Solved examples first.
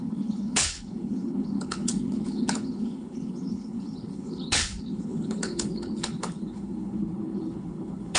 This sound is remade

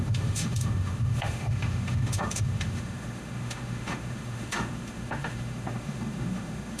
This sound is remade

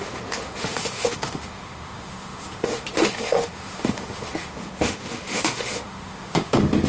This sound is remade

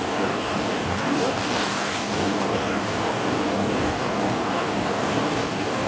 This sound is remade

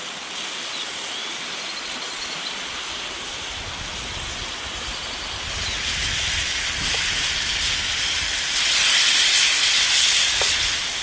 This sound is recorded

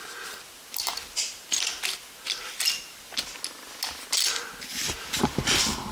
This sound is recorded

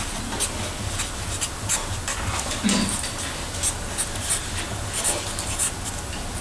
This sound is recorded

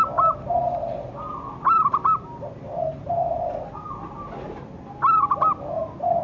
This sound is recorded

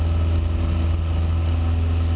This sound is recorded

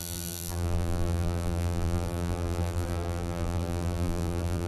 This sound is remade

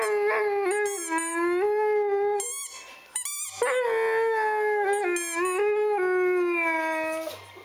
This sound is recorded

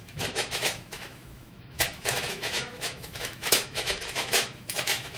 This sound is remade